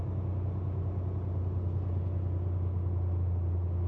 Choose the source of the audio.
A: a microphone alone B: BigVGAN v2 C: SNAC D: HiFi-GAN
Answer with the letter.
A